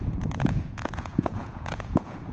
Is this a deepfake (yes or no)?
yes